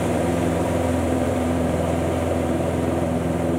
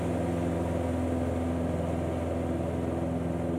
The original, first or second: second